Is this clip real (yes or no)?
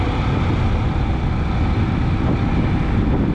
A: yes